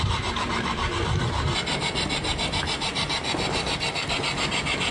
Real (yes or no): yes